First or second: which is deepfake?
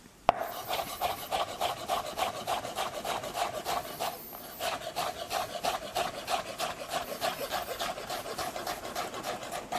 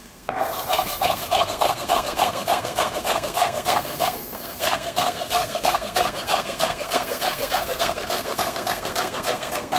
second